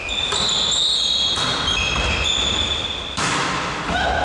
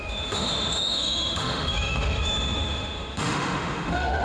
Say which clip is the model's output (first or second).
second